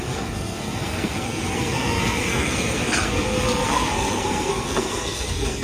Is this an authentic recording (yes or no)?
no